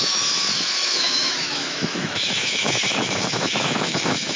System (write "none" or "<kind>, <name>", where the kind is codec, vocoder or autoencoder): autoencoder, DAC-VAE